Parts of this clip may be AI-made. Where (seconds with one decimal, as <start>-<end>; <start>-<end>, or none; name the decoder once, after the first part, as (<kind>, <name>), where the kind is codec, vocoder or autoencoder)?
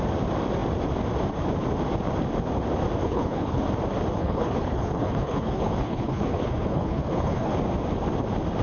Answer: 3.0-3.6 (codec, HILCodec); 4.2-7.5